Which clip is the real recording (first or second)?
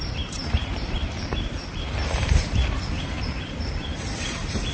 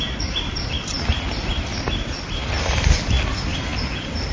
second